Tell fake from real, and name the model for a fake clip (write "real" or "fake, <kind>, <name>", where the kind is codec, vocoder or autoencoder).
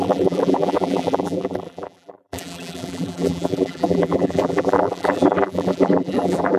fake, vocoder, BigVGAN v2